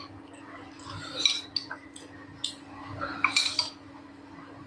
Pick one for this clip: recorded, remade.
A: recorded